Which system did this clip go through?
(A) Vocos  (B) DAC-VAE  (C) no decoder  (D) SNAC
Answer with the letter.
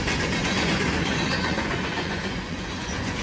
A